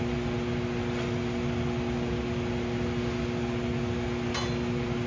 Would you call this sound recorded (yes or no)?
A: yes